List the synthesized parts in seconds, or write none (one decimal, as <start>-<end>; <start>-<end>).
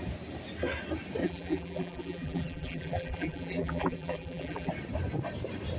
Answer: 1.2-4.7